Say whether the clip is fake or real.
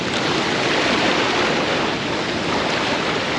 real